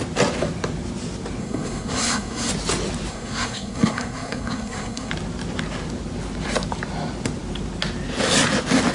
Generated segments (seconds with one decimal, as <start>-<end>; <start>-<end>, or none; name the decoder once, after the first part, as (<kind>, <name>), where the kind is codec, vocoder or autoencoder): 1.4-2.5 (codec, SNAC); 3.1-5.1